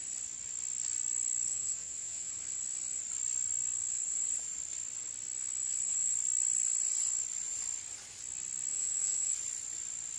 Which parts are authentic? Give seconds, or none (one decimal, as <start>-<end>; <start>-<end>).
0.0-1.5; 2.3-8.7; 9.3-10.2